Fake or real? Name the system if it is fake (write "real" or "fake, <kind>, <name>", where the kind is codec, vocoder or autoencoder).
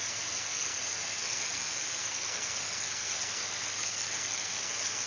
fake, codec, SNAC